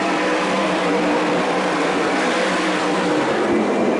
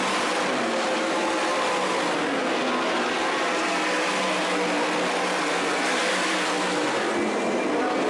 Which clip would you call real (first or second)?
second